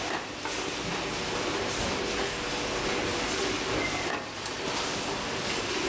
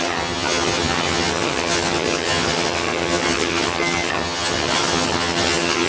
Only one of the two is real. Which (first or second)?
first